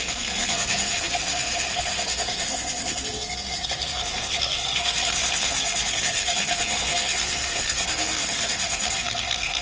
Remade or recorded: remade